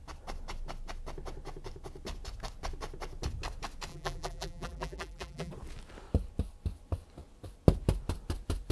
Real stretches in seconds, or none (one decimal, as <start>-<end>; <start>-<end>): 0.0-3.9; 5.5-8.7